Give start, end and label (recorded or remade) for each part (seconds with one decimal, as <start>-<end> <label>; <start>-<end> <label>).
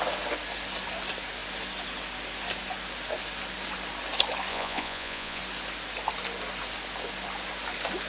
0.0-4.5 recorded; 4.5-5.4 remade; 5.4-8.1 recorded